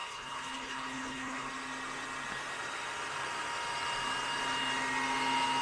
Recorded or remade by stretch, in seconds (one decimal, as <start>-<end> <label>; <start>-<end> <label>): 0.0-1.5 remade; 1.5-5.6 recorded